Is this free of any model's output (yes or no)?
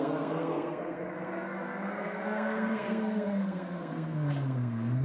no